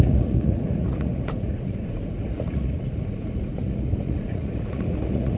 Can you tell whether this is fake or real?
fake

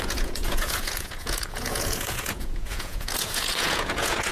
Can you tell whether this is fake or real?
fake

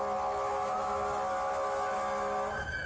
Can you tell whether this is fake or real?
real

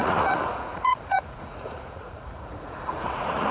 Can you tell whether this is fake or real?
fake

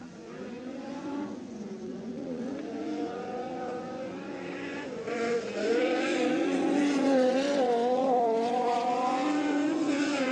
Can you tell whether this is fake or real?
fake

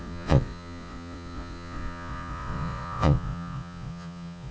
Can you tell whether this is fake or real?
fake